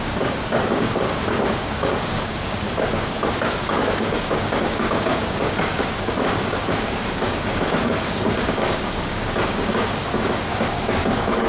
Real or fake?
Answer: fake